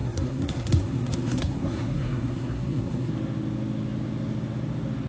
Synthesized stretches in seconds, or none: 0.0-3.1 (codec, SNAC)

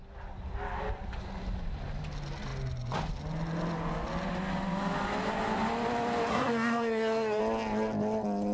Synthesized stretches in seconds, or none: 6.3-7.4 (codec, SNAC)